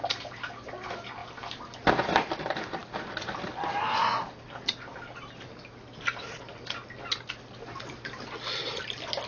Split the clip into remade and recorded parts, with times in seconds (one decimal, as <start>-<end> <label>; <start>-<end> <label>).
0.0-9.3 recorded